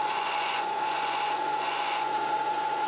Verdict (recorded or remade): remade